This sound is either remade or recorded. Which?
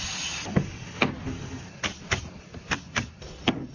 recorded